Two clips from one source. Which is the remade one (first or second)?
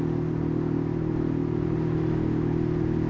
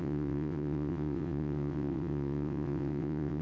second